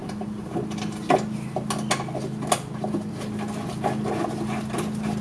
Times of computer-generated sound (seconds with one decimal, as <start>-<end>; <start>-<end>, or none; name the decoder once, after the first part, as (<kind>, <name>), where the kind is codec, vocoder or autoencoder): none